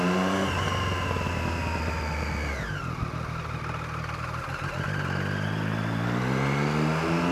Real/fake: real